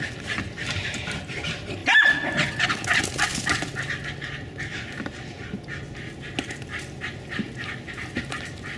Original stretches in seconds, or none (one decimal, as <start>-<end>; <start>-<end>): 0.0-8.8